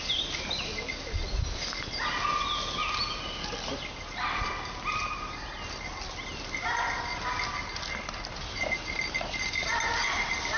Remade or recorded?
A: recorded